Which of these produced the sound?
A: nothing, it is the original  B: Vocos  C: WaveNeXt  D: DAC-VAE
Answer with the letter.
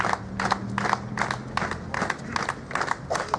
A